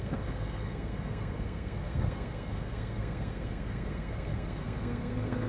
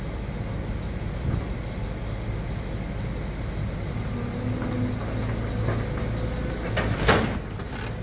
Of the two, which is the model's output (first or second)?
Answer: first